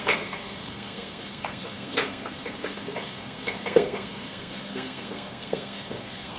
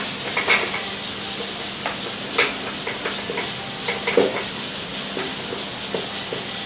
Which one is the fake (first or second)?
first